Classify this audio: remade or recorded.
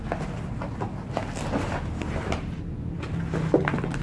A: recorded